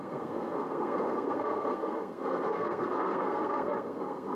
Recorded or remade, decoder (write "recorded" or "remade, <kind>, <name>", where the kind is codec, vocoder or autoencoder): remade, codec, SNAC